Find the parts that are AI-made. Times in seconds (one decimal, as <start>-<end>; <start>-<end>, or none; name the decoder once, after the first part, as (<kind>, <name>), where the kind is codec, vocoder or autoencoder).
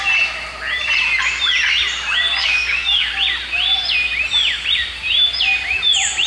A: 2.4-3.1 (codec, DAC)